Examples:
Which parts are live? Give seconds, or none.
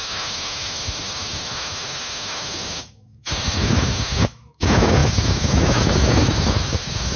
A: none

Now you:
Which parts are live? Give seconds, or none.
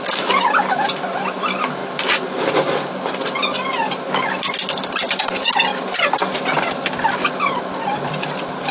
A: 0.0-8.7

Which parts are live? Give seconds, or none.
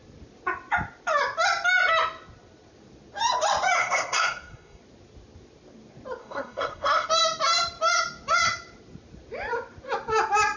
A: 0.0-3.8; 4.8-6.2; 7.1-10.6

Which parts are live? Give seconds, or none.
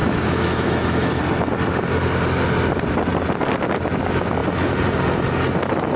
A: 1.2-6.0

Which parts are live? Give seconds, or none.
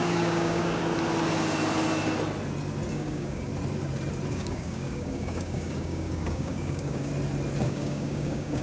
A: 0.8-2.9; 3.5-4.3; 7.1-7.6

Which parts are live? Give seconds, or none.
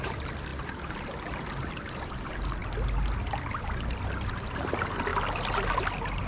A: 0.0-6.3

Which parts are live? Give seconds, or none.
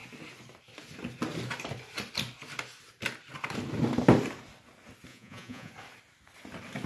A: 0.0-5.1; 5.7-6.9